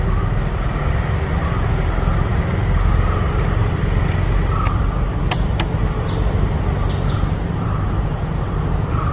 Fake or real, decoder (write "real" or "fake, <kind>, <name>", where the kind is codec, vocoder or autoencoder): real